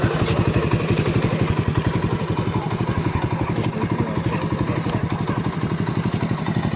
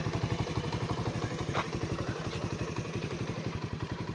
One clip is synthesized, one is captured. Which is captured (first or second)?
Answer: first